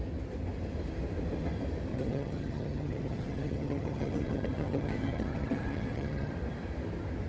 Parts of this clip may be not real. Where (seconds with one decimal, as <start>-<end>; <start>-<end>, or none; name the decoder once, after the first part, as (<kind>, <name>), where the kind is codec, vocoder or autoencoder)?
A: 1.9-6.3 (vocoder, HiFi-GAN)